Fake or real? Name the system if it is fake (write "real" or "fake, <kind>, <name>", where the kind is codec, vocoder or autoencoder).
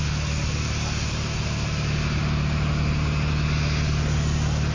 real